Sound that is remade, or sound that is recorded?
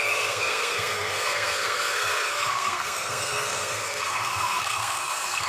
remade